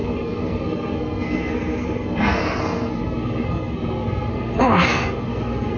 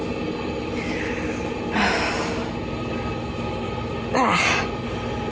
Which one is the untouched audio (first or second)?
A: second